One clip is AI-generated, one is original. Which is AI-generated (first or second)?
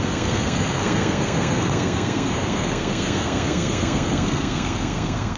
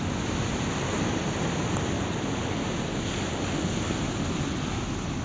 first